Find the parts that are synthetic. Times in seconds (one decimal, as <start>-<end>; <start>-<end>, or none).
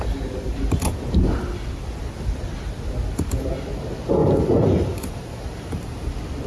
4.2-6.1